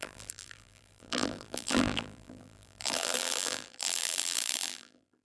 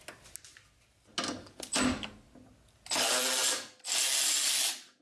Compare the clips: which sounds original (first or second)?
second